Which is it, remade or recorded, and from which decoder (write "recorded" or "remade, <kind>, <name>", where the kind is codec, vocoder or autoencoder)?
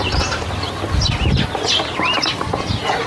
recorded